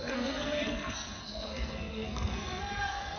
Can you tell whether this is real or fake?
fake